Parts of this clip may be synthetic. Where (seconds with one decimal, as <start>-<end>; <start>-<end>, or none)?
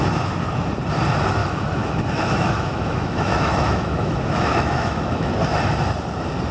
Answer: 1.4-5.3